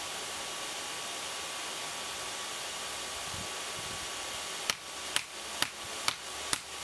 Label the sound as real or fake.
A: real